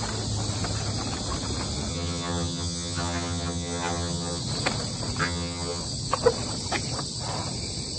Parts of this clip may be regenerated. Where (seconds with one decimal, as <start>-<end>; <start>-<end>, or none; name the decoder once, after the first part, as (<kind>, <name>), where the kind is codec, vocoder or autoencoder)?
1.9-4.4 (vocoder, HiFi-GAN); 5.2-5.8